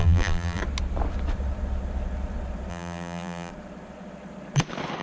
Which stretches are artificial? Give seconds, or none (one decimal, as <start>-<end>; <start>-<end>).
0.0-0.6; 2.7-3.5